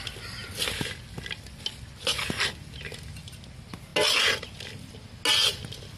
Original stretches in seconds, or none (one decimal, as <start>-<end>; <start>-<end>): 0.0-6.0